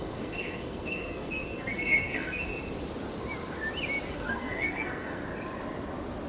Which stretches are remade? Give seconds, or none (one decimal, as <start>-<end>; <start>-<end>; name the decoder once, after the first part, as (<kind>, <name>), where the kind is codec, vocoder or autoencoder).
0.0-2.5 (codec, SNAC); 4.1-5.2